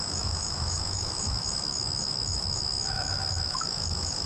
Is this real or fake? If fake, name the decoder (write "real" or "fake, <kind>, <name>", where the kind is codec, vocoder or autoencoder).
fake, autoencoder, DAC-VAE